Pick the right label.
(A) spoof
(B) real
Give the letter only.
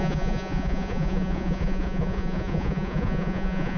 A